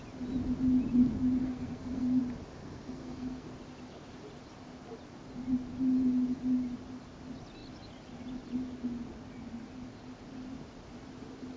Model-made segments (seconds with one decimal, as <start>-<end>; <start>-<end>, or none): 1.4-2.2; 2.6-3.6